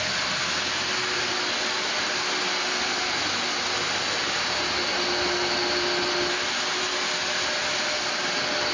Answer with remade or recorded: recorded